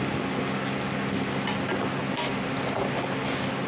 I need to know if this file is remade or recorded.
recorded